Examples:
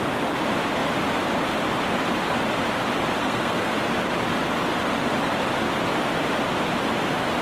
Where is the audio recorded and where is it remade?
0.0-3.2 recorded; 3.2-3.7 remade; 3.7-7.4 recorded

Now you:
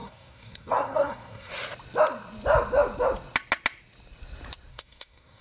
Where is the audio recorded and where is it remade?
0.0-1.5 remade; 1.5-4.7 recorded; 4.7-5.4 remade

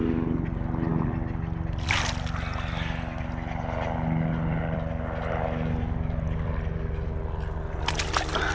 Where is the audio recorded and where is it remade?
0.0-8.5 recorded

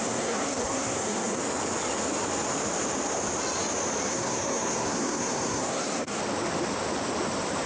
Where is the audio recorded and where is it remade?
0.0-1.4 remade; 1.4-4.1 recorded; 4.1-6.2 remade; 6.2-7.7 recorded